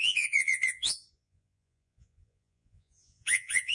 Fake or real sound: fake